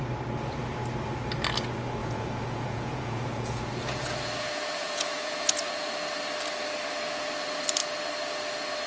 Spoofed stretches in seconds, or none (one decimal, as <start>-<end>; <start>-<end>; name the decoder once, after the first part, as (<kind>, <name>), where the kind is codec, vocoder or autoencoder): 2.0-5.7 (vocoder, Vocos)